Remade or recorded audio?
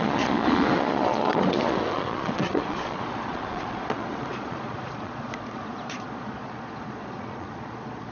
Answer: remade